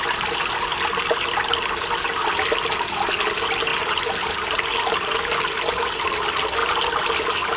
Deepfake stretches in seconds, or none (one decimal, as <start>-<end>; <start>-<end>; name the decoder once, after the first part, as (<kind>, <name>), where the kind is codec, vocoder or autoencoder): none